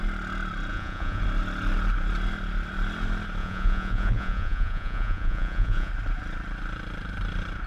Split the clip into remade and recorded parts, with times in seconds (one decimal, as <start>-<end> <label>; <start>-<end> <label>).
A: 0.0-0.7 recorded; 0.7-1.2 remade; 1.2-3.4 recorded; 3.4-5.9 remade; 5.9-7.7 recorded